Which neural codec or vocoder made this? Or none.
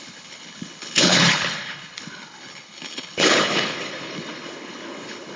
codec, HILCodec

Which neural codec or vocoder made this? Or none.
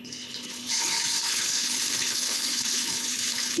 codec, HILCodec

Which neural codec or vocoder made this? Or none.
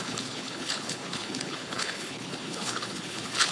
codec, HILCodec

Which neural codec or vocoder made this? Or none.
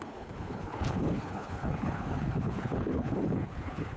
codec, HILCodec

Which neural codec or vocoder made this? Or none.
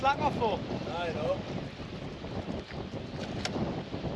none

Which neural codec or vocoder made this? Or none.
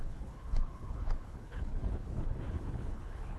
codec, HILCodec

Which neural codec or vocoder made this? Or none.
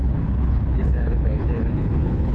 codec, HILCodec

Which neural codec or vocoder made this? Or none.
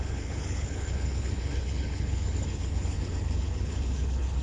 codec, HILCodec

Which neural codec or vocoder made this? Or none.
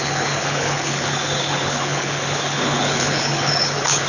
codec, HILCodec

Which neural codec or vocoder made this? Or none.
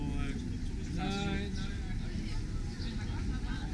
none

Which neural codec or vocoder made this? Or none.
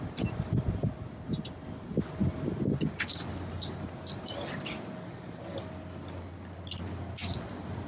none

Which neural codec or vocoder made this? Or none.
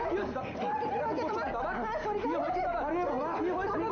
none